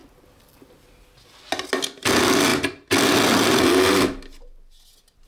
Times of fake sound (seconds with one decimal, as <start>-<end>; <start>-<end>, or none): none